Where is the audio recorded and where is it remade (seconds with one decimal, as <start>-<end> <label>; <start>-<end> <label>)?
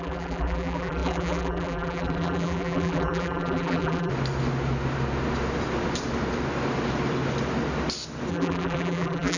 0.0-4.1 remade; 4.1-8.3 recorded; 8.3-9.4 remade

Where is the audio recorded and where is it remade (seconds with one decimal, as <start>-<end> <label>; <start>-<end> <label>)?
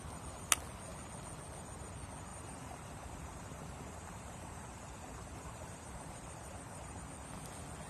0.0-2.3 recorded; 2.3-7.0 remade; 7.0-7.9 recorded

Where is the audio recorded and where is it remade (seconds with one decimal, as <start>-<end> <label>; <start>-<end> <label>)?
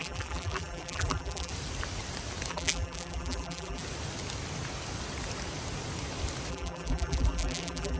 0.0-1.5 remade; 1.5-2.5 recorded; 2.5-3.8 remade; 3.8-6.5 recorded; 6.5-8.0 remade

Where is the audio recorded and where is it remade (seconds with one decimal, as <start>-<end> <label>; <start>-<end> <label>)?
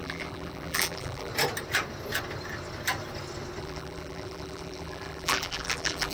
0.0-1.3 remade; 1.3-3.6 recorded; 3.6-6.1 remade